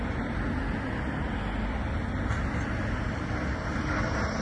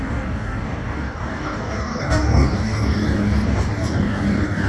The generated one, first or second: second